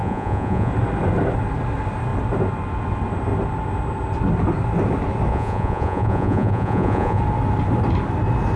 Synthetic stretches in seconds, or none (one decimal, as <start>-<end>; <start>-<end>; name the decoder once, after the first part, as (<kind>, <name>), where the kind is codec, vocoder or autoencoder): 0.0-0.7 (vocoder, Vocos); 5.3-7.2